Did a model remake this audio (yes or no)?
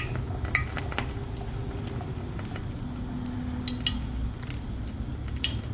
no